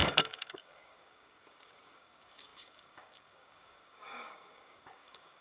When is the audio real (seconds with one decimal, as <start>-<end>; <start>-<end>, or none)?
none